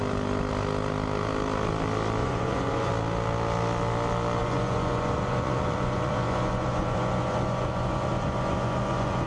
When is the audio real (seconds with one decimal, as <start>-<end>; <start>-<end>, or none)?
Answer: 0.0-2.2; 2.9-4.4